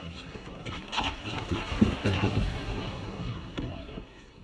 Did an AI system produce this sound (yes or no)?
yes